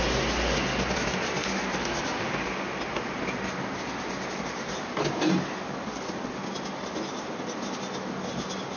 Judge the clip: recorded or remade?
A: recorded